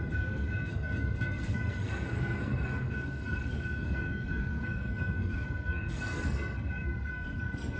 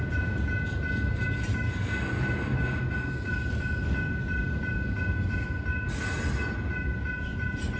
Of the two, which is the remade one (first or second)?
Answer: first